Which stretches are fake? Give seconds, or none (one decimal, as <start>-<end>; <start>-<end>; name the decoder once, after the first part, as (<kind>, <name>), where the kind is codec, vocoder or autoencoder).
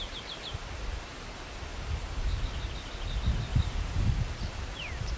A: 1.7-2.4 (vocoder, BigVGAN v2); 3.5-4.1